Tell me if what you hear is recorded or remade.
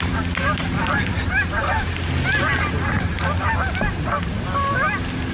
recorded